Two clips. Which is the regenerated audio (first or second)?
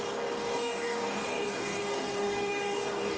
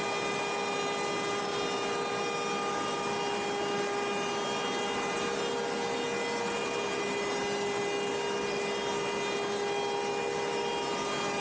first